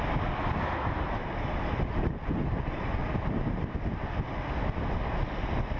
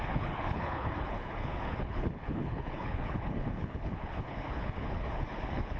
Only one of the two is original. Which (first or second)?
first